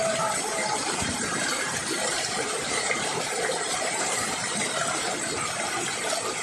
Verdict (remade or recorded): remade